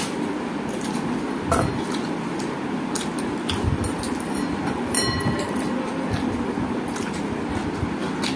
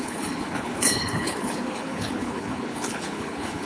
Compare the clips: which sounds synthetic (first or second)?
second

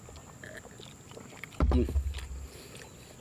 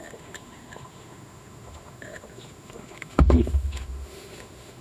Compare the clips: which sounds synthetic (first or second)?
second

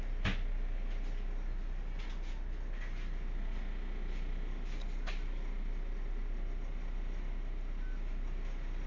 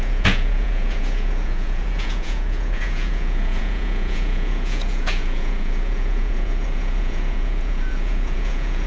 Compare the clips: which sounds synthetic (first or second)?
second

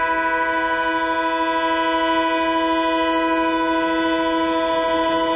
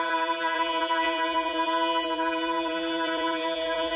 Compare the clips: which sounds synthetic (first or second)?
second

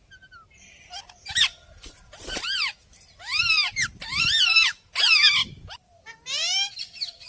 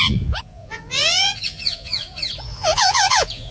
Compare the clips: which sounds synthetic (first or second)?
second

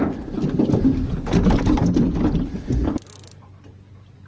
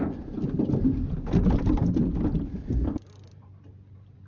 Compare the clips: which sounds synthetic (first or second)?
second